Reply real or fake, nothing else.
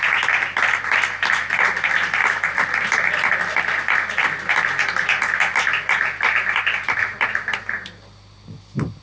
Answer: real